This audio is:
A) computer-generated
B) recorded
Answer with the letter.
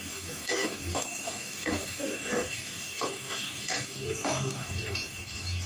A